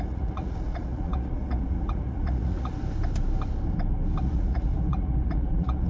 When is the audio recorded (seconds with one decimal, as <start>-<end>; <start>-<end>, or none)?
2.7-4.2